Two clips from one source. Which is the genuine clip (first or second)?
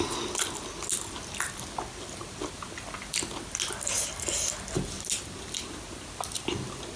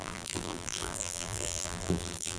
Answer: first